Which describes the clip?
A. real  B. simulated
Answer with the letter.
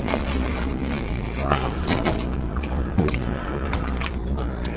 B